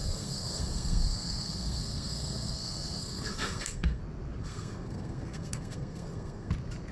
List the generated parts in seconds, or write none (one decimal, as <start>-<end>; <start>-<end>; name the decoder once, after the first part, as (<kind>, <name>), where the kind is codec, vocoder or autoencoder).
0.0-4.0 (codec, SNAC); 4.4-6.5